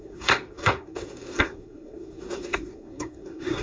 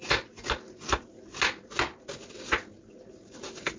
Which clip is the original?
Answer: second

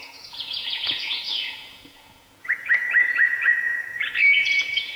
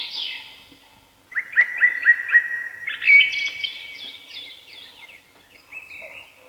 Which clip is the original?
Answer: second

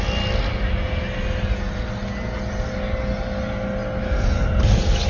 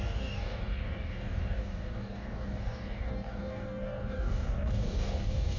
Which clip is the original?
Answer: first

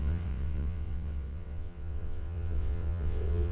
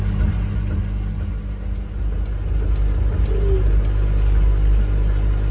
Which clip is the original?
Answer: second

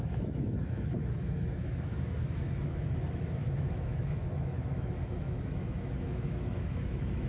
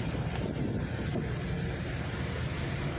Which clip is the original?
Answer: second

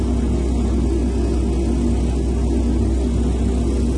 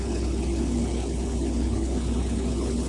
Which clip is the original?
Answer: first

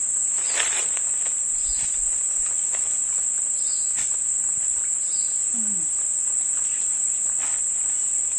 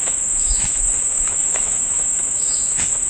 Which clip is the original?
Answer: first